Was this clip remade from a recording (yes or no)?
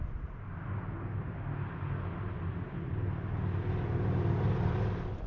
no